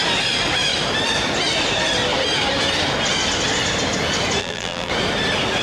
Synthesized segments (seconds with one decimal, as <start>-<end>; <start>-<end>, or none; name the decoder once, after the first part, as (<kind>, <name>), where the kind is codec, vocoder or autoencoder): 4.4-4.9 (vocoder, BigVGAN v2)